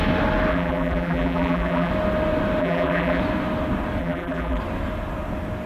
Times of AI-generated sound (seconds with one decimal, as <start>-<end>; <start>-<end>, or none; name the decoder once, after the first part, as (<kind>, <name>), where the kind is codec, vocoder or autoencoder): 0.5-1.9 (vocoder, BigVGAN v2); 2.6-3.2; 4.0-4.6

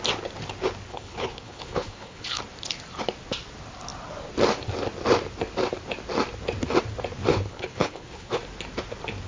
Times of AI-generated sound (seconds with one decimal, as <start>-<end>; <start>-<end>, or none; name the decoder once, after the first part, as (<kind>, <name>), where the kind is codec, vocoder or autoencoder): 0.9-2.4 (codec, HILCodec); 7.3-8.4

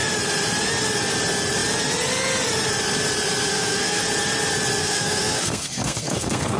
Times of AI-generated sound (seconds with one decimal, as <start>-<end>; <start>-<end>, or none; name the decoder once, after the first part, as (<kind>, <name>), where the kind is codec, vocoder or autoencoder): 3.5-4.0 (codec, SNAC); 4.8-6.6

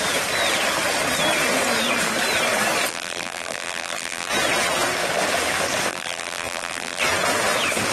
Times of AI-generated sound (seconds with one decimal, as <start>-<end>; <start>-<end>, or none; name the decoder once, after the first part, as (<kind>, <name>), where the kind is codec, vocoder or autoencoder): 2.9-4.3 (vocoder, BigVGAN v2); 5.9-7.0

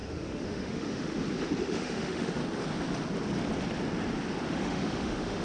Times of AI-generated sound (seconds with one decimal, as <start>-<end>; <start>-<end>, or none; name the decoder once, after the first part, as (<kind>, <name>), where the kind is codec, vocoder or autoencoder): 0.0-1.1 (autoencoder, DAC-VAE); 1.6-2.4; 4.4-5.4

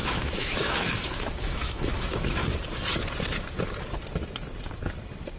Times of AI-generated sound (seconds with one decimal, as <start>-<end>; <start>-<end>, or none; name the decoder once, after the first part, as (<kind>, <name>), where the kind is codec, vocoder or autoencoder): 0.0-2.4 (autoencoder, DAC-VAE)

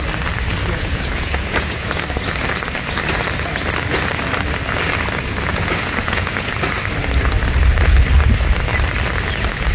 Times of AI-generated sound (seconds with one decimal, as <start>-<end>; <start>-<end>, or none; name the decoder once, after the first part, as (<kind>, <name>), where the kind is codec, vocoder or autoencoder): 0.6-2.0 (vocoder, Vocos); 5.5-6.5